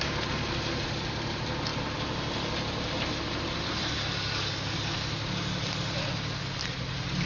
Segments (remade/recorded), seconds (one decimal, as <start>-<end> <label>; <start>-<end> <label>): 0.0-7.3 recorded